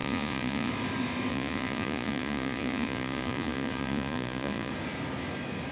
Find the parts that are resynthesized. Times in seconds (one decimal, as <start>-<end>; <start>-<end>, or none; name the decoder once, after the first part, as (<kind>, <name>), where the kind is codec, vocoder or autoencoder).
0.0-0.7 (vocoder, Vocos); 1.3-4.7